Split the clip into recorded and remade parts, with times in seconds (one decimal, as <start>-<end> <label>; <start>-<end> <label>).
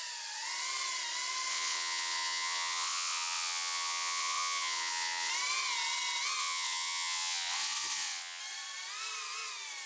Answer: 0.0-1.5 recorded; 1.5-5.3 remade; 5.3-6.4 recorded; 6.4-8.4 remade; 8.4-9.9 recorded